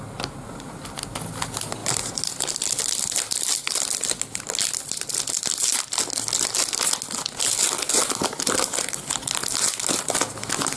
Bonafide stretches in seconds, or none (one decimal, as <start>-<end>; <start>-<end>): 0.0-10.8